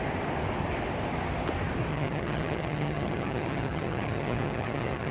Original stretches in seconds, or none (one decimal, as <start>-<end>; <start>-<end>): 0.0-1.9